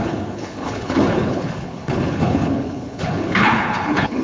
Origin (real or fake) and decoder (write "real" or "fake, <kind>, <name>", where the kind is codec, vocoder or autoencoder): fake, codec, HILCodec